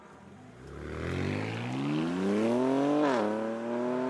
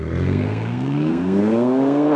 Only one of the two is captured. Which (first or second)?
first